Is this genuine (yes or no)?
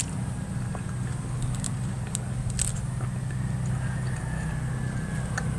yes